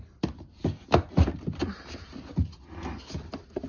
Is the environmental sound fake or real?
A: real